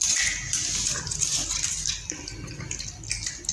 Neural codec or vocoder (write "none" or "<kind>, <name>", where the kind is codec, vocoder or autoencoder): none